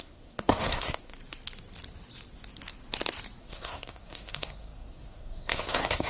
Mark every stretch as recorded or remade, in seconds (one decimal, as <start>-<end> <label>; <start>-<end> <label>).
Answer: 0.0-1.1 remade; 1.1-3.4 recorded; 3.4-6.1 remade